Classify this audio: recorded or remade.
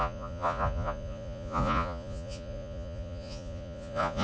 remade